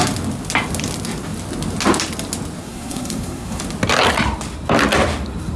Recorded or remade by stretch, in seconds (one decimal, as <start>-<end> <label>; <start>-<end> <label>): 0.0-2.6 recorded; 2.6-3.6 remade; 3.6-5.6 recorded